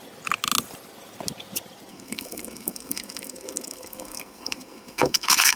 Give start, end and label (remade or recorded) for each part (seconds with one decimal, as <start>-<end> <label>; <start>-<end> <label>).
0.0-1.9 recorded; 1.9-5.6 remade